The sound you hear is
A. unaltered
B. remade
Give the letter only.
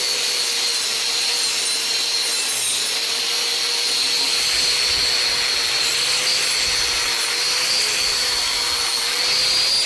A